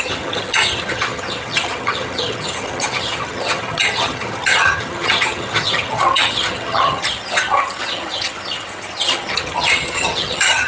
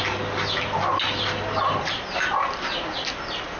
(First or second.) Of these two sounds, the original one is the second